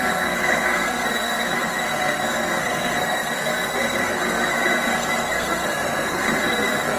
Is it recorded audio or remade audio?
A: remade